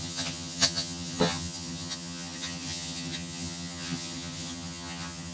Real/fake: fake